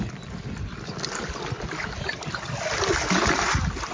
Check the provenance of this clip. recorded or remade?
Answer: recorded